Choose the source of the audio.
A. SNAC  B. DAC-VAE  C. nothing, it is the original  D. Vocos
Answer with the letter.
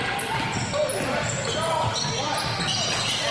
C